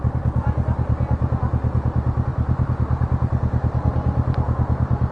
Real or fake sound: real